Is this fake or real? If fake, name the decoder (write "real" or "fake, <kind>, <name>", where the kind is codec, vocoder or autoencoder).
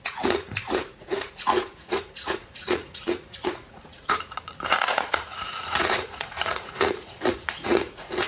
fake, vocoder, Vocos